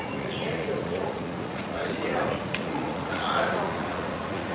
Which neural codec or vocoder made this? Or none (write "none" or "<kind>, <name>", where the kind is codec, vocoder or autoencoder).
vocoder, Vocos